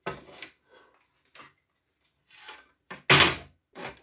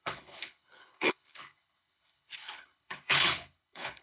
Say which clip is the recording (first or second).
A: first